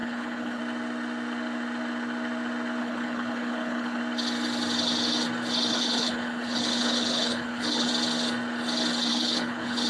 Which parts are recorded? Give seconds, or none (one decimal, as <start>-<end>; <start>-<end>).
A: 0.6-2.8; 4.0-5.7; 7.9-9.1